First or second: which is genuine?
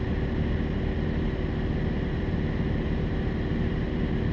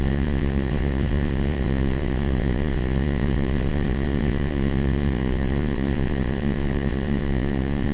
first